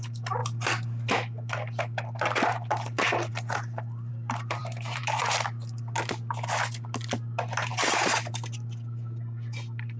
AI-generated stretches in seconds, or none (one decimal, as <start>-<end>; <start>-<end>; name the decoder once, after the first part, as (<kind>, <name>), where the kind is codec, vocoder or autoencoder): 4.6-5.2 (vocoder, BigVGAN v2)